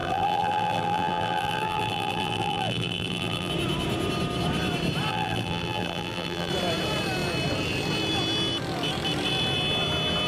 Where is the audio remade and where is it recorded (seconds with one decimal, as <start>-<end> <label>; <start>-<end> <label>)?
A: 0.0-3.5 remade; 3.5-5.1 recorded; 5.1-6.5 remade; 6.5-10.3 recorded